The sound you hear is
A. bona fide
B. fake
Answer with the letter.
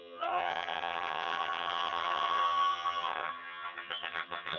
B